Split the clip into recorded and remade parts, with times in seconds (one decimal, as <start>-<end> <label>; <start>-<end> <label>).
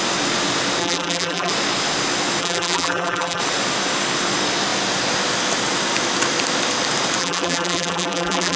0.0-0.8 recorded; 0.8-1.5 remade; 1.5-2.4 recorded; 2.4-3.4 remade; 3.4-7.2 recorded; 7.2-8.6 remade